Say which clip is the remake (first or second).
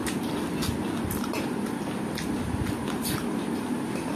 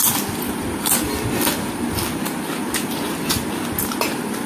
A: first